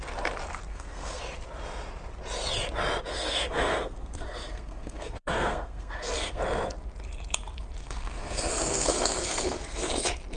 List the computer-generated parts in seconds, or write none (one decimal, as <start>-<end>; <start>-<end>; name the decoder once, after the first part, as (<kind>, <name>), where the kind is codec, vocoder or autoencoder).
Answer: 0.7-1.2 (codec, SNAC); 3.1-6.4; 7.8-9.9